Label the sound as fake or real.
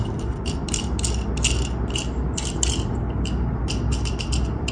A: real